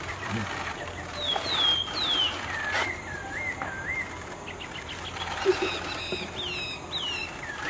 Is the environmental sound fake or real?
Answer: real